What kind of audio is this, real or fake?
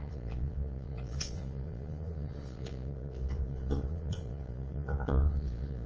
fake